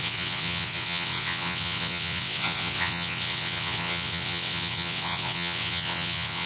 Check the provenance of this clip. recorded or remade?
remade